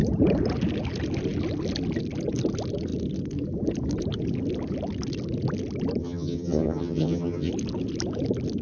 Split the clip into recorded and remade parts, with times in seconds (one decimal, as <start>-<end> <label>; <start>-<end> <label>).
0.0-6.0 recorded; 6.0-7.5 remade; 7.5-8.6 recorded